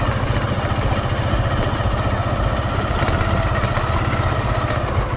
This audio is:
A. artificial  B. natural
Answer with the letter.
B